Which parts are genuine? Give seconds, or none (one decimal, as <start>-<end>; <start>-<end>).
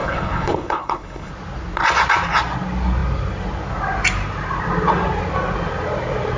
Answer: 1.3-6.4